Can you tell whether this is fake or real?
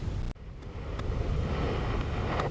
real